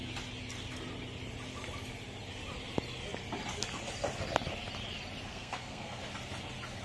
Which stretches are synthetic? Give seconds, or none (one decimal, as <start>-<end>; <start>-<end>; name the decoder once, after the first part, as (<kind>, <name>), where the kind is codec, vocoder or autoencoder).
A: 5.3-6.0 (codec, SNAC)